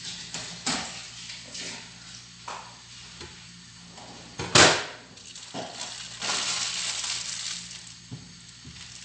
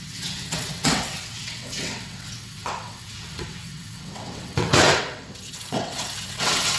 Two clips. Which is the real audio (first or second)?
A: first